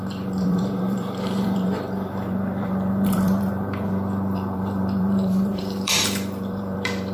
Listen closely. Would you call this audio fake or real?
fake